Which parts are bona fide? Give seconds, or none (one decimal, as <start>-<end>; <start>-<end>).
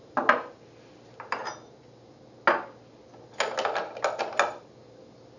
0.0-5.4